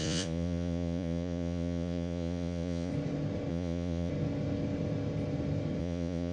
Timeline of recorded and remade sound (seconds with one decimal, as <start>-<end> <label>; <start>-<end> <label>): 0.0-2.9 remade; 2.9-3.5 recorded; 3.5-4.1 remade; 4.1-5.8 recorded; 5.8-6.3 remade